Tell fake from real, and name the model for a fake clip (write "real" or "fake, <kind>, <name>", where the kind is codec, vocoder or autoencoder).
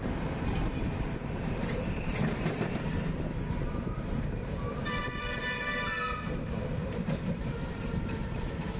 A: fake, vocoder, BigVGAN v2